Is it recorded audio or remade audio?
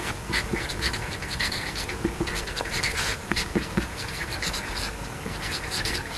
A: remade